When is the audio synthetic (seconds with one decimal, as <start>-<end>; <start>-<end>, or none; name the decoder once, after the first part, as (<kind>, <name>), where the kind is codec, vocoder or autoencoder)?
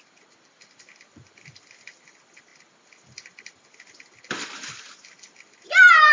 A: none